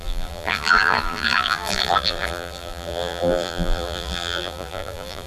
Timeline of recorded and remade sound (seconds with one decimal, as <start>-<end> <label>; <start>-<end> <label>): 0.0-5.3 remade